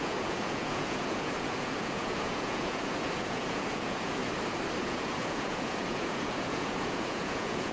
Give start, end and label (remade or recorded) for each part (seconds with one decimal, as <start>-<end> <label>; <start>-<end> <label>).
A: 0.0-4.2 remade; 4.2-4.8 recorded; 4.8-7.7 remade